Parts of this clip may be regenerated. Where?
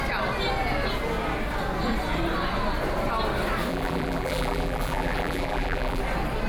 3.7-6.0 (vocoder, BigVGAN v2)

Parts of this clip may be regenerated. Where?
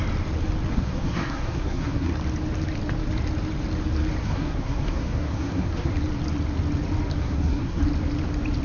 0.7-2.1 (codec, SNAC); 4.2-5.9; 7.2-7.8